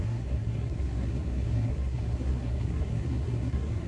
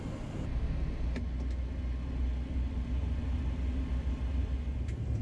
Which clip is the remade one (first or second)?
first